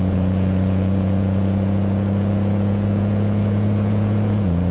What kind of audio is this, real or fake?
fake